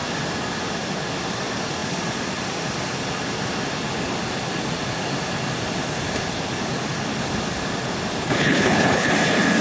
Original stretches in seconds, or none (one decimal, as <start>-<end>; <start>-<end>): 0.0-8.2; 9.1-9.6